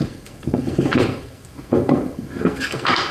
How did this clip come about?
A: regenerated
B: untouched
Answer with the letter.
A